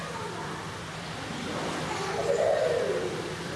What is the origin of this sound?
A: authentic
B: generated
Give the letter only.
A